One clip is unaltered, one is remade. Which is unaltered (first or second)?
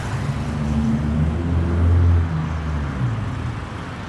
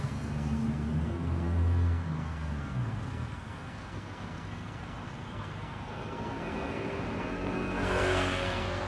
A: first